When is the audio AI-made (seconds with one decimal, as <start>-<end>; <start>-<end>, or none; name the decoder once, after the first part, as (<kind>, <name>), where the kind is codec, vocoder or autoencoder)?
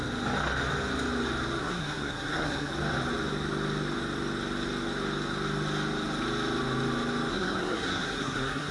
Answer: 1.6-2.7 (codec, SNAC); 7.3-8.7